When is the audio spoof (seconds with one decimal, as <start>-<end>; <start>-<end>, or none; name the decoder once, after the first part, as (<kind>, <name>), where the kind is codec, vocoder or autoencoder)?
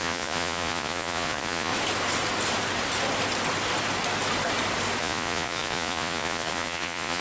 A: 0.0-1.7 (vocoder, Vocos); 5.0-7.2